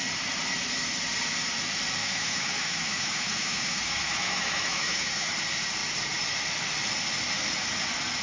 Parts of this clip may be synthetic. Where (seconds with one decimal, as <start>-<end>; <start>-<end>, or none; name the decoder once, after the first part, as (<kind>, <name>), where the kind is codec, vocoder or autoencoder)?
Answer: 2.0-5.3 (autoencoder, DAC-VAE)